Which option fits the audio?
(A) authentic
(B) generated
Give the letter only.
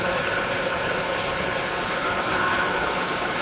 B